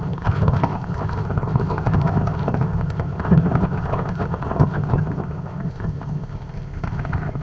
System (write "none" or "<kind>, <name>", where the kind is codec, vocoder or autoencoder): codec, ZipCodec